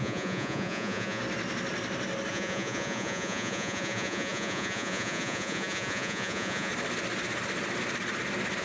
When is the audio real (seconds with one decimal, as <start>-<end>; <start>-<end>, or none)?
1.2-2.3; 6.7-8.6